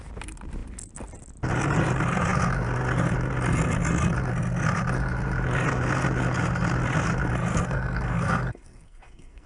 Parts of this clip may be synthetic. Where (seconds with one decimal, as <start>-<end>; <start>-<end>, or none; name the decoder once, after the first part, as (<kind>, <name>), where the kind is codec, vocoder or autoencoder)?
7.5-9.5 (codec, SNAC)